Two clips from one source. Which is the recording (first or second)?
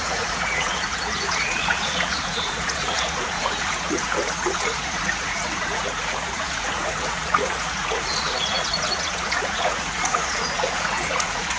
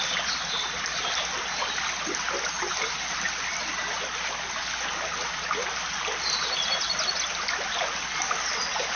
second